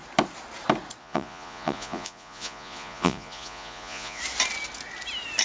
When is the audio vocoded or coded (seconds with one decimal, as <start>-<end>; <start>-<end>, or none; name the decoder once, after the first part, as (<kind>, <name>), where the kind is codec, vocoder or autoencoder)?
1.0-4.2 (vocoder, Vocos)